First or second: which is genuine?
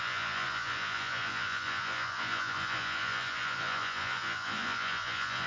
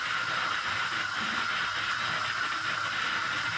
second